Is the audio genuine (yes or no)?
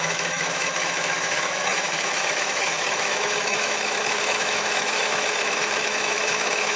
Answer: no